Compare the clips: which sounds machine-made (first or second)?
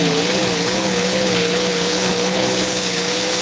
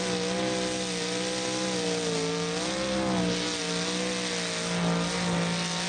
first